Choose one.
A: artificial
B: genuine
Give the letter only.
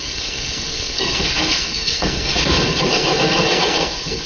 A